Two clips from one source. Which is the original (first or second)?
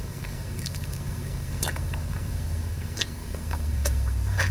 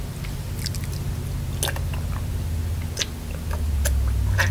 second